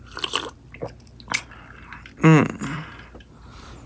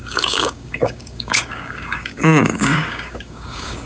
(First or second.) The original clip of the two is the first